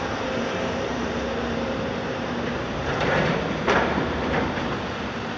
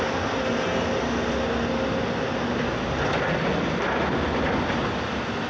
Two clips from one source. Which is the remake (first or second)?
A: first